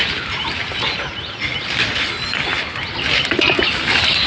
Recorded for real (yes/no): yes